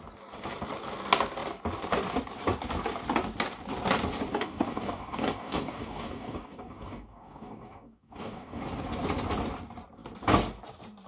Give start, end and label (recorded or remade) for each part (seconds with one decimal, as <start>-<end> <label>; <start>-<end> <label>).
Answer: 0.0-4.3 recorded; 4.3-8.6 remade; 8.6-11.1 recorded